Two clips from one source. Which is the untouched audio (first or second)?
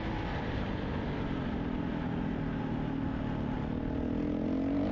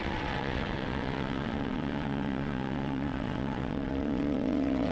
first